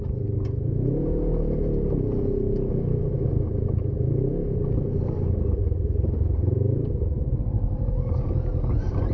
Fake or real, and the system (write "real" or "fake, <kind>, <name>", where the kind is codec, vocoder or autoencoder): fake, vocoder, BigVGAN v2